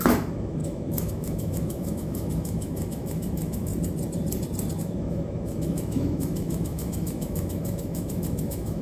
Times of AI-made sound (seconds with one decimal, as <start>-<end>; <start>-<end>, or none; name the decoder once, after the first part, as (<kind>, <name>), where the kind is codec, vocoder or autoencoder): 0.0-3.7 (autoencoder, DAC-VAE); 4.8-8.8

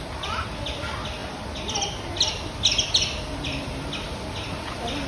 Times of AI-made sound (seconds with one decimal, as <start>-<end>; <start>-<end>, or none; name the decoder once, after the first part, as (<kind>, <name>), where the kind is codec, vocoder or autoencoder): none

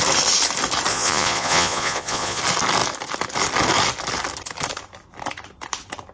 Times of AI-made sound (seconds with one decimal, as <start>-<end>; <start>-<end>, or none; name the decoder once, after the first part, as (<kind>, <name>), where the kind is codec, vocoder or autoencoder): 0.9-2.4 (vocoder, Vocos)

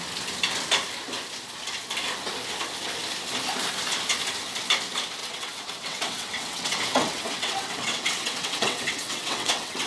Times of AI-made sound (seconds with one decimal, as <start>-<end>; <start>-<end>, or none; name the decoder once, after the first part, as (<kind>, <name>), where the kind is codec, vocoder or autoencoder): 5.2-9.9 (vocoder, WaveNeXt)